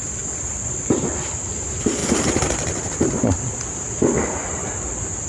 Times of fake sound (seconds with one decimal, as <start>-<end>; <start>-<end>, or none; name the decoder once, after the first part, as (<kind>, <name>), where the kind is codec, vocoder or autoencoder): none